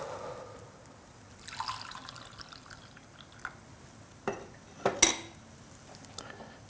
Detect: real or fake real